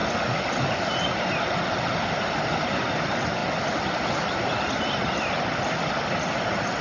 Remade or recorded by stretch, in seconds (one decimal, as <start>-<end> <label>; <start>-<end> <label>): 0.0-6.8 remade